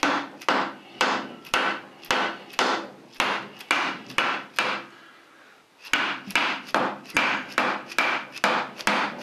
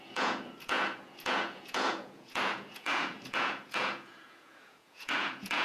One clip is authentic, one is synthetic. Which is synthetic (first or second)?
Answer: second